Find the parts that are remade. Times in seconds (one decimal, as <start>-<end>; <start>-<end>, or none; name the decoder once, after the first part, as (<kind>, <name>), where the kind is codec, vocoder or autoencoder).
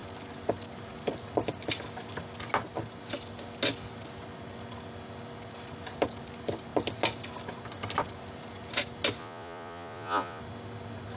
9.2-10.4 (vocoder, Vocos)